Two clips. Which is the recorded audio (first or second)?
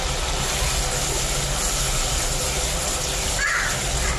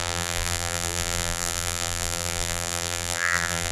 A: first